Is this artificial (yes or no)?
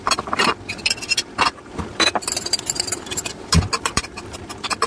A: yes